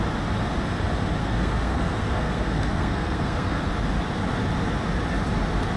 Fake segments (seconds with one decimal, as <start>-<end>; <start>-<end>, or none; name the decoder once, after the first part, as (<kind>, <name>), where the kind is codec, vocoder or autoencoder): 1.2-3.7 (codec, SNAC)

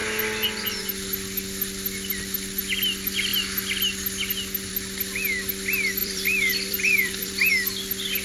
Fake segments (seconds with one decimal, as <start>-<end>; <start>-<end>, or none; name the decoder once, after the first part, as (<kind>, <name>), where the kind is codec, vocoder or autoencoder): 6.0-7.5 (vocoder, BigVGAN v2)

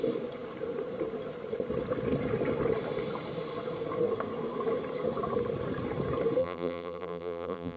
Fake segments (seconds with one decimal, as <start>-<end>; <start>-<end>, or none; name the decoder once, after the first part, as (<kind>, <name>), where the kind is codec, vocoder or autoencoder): 6.4-7.8 (vocoder, BigVGAN v2)

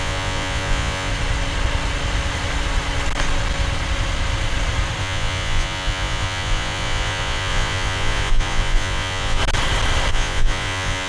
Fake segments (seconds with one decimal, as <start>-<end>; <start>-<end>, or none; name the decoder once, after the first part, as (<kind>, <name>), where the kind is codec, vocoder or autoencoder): 0.0-1.1 (vocoder, Vocos); 5.0-9.4; 10.1-11.1